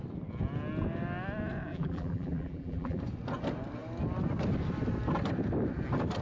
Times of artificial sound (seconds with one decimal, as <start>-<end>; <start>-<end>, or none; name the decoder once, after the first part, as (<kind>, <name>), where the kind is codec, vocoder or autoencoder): 1.7-3.0 (vocoder, BigVGAN v2)